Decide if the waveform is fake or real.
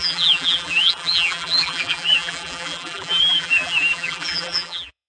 fake